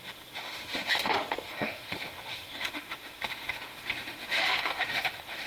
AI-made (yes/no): yes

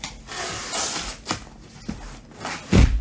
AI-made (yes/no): no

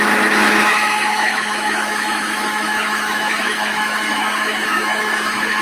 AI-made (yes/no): yes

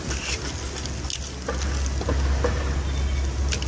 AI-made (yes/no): no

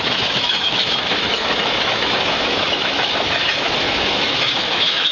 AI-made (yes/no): yes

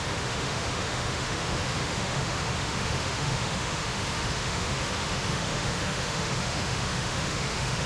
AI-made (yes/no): yes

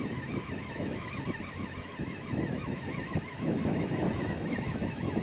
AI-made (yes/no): yes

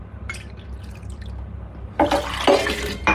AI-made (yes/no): no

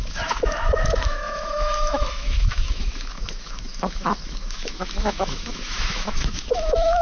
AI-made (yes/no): yes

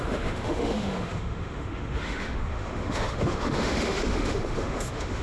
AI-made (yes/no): yes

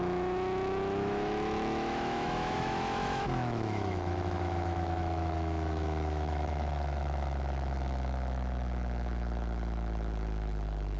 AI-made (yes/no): yes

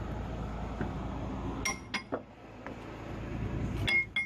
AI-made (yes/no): no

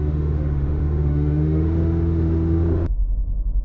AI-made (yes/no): yes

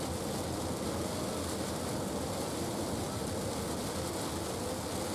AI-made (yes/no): no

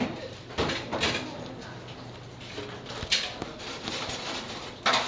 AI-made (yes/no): no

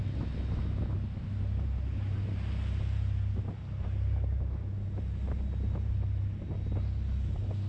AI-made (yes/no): no